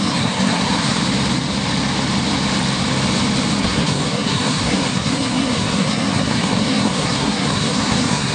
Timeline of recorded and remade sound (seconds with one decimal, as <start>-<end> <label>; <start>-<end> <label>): 0.0-1.0 remade; 1.0-3.6 recorded; 3.6-8.3 remade